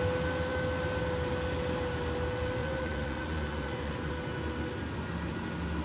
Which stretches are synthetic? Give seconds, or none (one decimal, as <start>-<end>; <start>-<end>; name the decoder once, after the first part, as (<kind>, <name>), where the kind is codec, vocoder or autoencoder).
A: 2.6-4.1 (vocoder, Vocos)